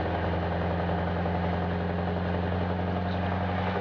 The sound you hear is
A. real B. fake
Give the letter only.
A